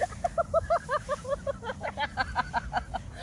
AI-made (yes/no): no